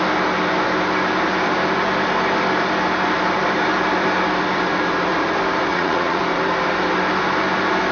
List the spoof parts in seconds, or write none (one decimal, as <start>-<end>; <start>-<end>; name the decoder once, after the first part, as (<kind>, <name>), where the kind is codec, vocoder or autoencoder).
5.7-6.2 (vocoder, Vocos)